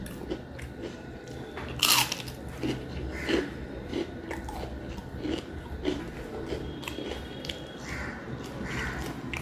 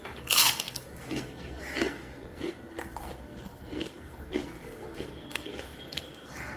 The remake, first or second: second